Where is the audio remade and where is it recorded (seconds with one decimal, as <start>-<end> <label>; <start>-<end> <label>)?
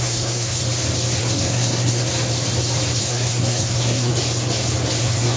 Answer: 0.0-0.6 remade; 0.6-1.2 recorded; 1.2-2.1 remade; 2.1-3.0 recorded; 3.0-4.1 remade; 4.1-5.0 recorded; 5.0-5.4 remade